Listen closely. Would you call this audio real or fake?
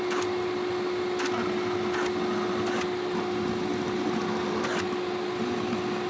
real